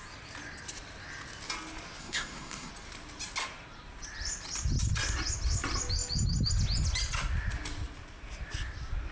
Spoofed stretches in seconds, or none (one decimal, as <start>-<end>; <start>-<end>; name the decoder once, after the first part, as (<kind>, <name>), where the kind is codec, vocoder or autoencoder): 2.0-2.7 (codec, SNAC)